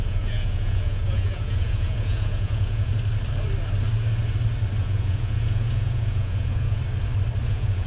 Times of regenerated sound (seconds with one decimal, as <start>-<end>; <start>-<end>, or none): 0.0-2.9; 4.8-6.8; 7.5-7.9